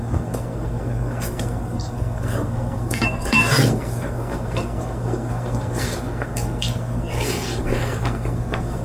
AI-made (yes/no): yes